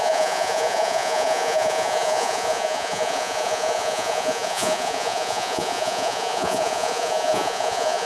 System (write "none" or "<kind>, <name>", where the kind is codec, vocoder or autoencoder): vocoder, Vocos